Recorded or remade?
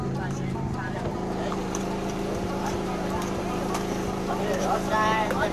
remade